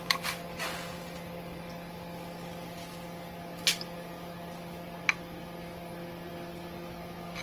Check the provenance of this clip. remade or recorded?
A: recorded